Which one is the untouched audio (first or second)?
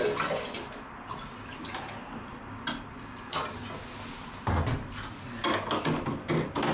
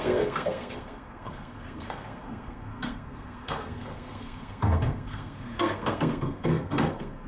first